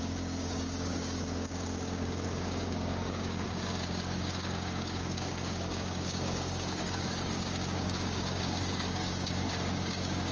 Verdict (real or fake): fake